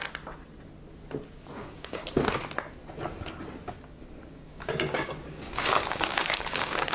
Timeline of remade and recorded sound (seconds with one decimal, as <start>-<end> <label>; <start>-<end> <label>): 0.0-1.6 recorded; 1.6-2.0 remade; 2.0-4.3 recorded; 4.3-6.9 remade